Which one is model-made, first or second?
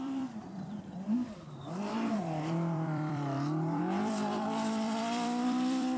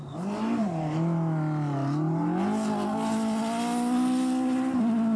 first